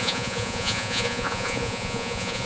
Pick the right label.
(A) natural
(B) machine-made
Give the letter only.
B